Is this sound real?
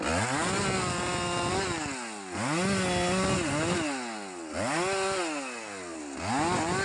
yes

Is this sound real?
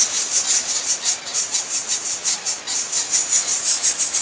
yes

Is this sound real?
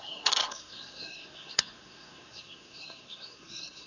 no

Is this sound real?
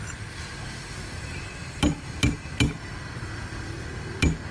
yes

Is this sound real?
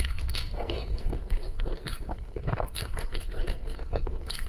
no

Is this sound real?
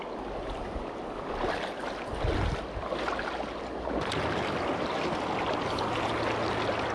yes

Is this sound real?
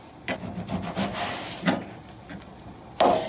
yes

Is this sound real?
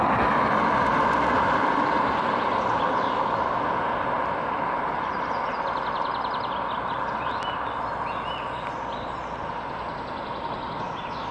yes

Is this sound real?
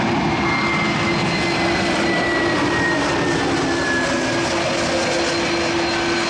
yes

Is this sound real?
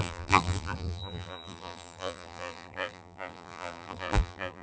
no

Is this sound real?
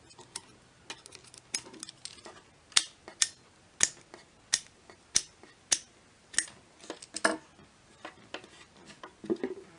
yes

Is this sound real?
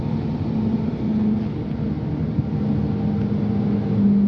yes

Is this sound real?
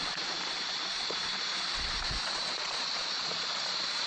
no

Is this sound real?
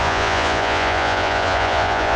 no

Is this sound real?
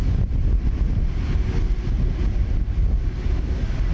yes